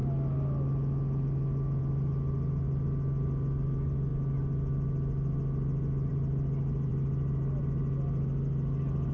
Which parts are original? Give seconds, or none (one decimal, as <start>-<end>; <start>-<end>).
0.0-9.1